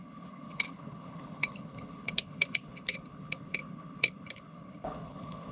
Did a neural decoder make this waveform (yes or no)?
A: yes